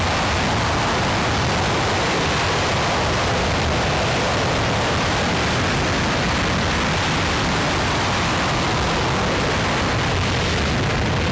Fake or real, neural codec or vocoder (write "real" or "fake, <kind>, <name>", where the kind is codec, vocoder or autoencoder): real